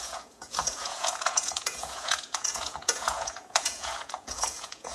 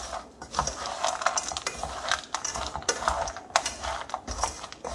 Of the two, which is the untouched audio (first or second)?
second